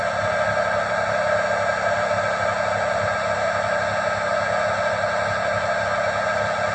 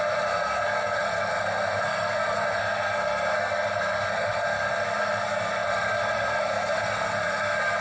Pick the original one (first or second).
first